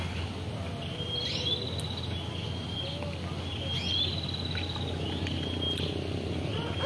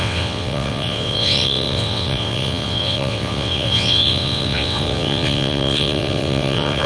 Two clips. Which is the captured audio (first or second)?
first